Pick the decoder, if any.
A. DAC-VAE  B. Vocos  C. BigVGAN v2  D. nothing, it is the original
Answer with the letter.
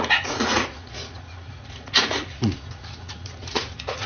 B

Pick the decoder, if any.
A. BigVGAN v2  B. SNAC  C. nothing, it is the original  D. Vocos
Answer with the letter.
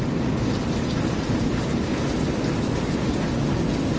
C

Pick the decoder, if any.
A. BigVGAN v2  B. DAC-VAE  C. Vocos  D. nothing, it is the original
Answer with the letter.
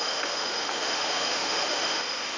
B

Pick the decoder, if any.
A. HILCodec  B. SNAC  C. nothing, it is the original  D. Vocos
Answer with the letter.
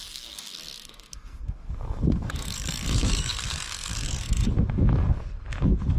B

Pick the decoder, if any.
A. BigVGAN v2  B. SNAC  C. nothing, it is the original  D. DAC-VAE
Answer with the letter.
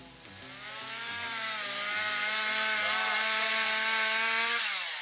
C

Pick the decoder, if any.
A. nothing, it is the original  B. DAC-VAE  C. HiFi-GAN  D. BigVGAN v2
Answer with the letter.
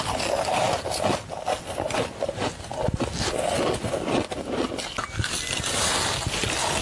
A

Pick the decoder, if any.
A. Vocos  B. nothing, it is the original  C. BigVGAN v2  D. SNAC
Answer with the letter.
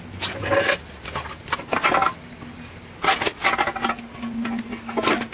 B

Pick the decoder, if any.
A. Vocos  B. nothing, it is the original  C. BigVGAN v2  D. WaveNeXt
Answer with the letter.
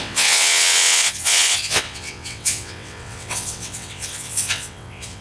D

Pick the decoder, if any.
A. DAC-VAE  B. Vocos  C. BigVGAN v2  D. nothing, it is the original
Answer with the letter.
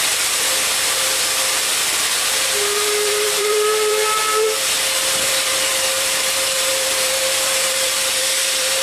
C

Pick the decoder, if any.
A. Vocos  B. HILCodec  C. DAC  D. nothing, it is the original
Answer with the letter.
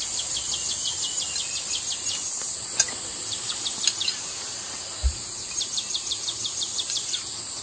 D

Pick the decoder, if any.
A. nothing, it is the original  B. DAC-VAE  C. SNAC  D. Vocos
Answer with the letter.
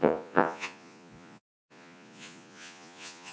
D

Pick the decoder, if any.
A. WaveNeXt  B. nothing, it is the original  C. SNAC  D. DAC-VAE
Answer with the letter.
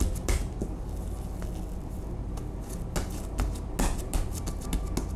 B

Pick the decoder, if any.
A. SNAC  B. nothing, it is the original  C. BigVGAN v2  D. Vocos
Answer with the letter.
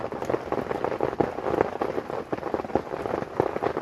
B